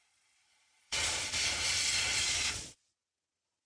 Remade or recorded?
remade